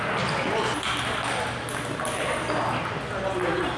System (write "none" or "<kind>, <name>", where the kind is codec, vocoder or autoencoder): none